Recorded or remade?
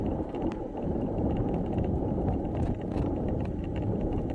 remade